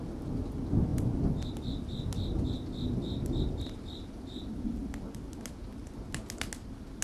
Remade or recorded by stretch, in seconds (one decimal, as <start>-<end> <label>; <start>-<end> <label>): 0.0-7.0 recorded